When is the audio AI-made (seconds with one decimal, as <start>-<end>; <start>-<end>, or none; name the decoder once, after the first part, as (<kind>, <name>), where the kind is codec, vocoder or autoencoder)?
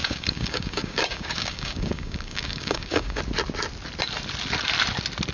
0.0-3.2 (codec, DAC)